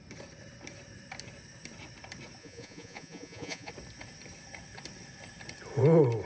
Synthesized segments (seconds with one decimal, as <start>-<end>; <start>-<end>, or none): 2.4-3.7